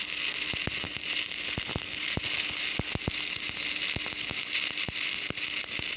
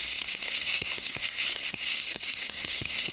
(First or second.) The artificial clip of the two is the second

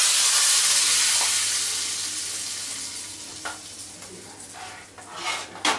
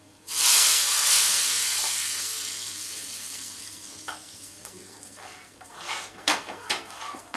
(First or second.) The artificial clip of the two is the second